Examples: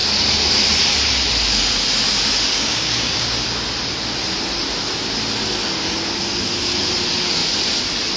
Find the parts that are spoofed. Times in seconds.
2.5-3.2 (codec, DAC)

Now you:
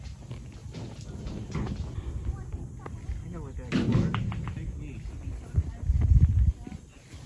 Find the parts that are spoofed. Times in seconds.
0.6-1.5 (vocoder, BigVGAN v2)